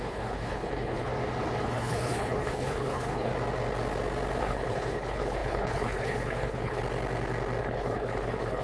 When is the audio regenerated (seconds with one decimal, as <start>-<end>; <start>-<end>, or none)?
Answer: 0.0-1.1; 1.6-3.3; 4.4-6.8; 7.6-8.6